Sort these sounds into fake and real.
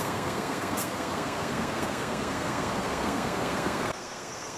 fake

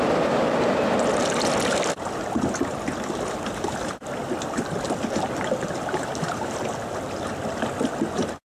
real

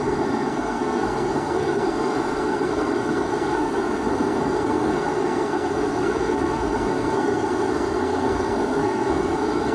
fake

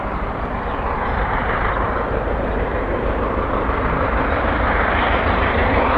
fake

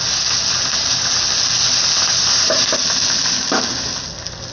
real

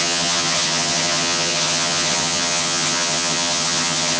fake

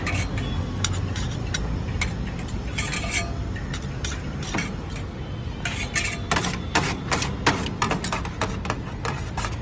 real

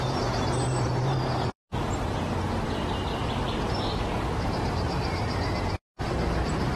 fake